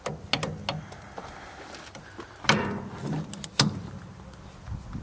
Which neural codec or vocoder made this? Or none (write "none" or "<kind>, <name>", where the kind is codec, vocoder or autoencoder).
none